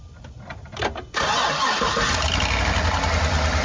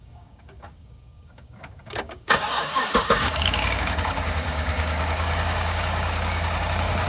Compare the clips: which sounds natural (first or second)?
first